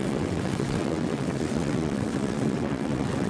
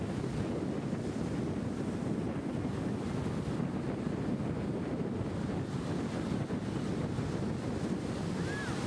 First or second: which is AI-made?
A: first